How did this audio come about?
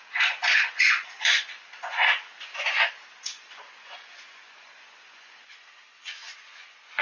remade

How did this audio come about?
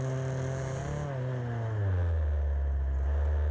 recorded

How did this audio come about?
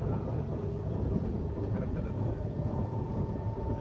remade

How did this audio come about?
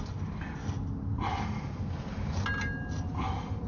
recorded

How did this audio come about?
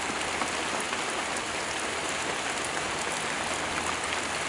recorded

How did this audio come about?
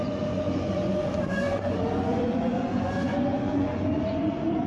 remade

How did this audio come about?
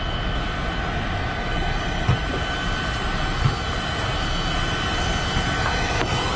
recorded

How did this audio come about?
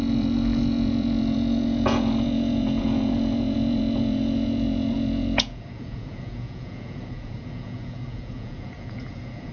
remade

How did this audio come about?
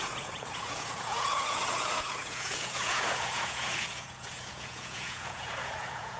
remade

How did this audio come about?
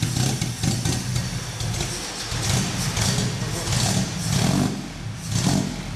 recorded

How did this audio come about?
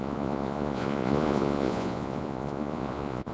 remade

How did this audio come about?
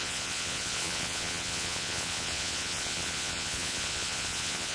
remade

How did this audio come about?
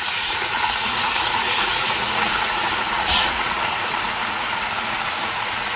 remade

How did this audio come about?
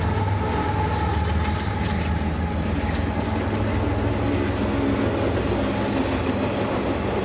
recorded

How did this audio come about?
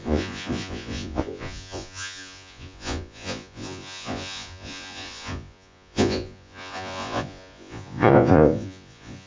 remade